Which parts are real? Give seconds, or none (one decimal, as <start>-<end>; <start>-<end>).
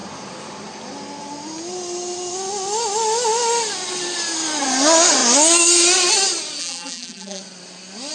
0.0-6.6; 7.4-8.1